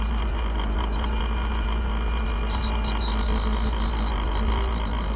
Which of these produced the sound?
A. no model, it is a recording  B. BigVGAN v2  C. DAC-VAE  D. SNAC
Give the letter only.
A